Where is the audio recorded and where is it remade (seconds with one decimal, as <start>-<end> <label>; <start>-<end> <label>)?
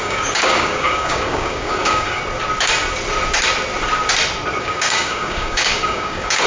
0.0-2.2 remade; 2.2-4.6 recorded; 4.6-6.5 remade